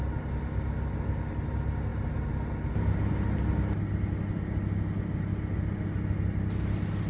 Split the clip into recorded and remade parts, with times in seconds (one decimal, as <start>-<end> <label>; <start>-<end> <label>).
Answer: 0.0-7.1 recorded